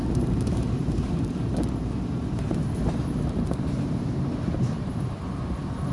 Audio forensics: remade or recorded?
remade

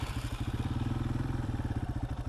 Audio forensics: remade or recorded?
remade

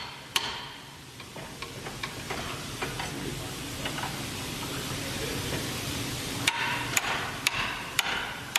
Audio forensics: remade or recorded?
remade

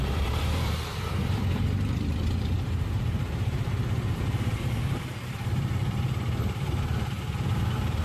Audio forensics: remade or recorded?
remade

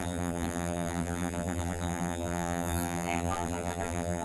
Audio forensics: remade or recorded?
remade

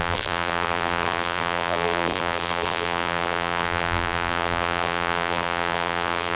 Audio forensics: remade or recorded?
remade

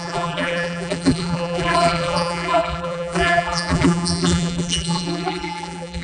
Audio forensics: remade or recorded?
remade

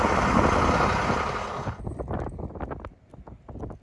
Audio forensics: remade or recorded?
recorded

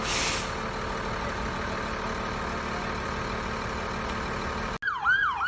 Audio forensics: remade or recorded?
recorded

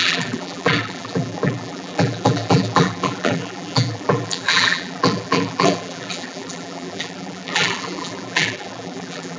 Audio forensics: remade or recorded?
remade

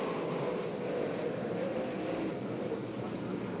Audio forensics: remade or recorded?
remade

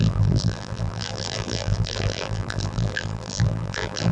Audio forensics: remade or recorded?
remade